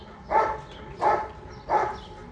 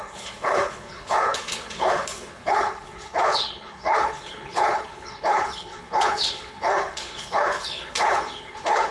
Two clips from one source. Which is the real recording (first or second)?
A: first